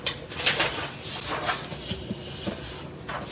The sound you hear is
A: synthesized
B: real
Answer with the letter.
B